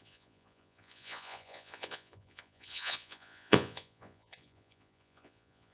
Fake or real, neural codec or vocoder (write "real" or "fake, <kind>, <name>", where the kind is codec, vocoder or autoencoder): fake, vocoder, Vocos